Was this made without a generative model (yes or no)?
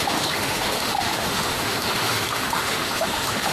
no